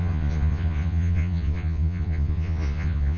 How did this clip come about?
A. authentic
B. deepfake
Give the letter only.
B